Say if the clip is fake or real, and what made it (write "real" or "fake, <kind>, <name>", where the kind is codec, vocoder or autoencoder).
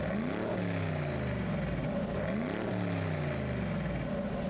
real